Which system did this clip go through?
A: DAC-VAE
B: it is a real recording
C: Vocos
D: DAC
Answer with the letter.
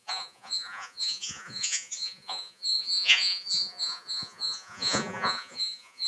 C